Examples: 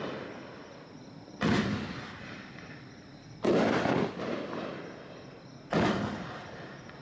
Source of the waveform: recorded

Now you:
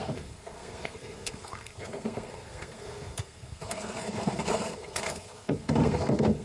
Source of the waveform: remade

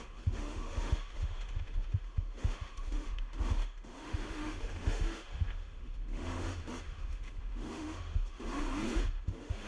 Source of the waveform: remade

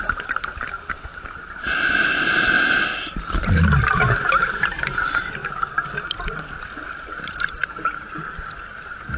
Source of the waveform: recorded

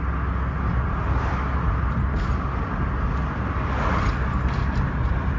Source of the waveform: recorded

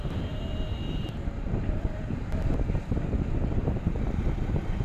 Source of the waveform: remade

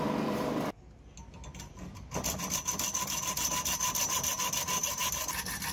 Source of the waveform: recorded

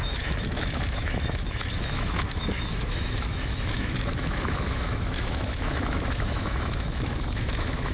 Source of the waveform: remade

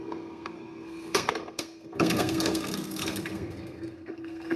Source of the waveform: remade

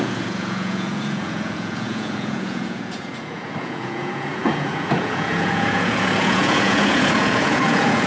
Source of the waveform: remade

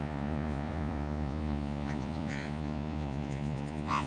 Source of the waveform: remade